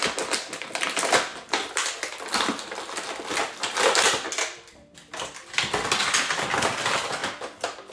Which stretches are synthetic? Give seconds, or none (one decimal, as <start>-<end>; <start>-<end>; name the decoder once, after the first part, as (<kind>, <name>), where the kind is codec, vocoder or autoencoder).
1.3-6.0 (vocoder, BigVGAN v2)